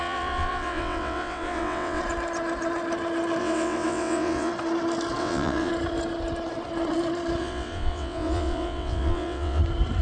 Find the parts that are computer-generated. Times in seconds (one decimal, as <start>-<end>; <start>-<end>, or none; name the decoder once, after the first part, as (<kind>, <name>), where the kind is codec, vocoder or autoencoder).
0.0-2.0 (vocoder, WaveNeXt); 3.4-4.5; 5.2-5.7; 7.4-9.6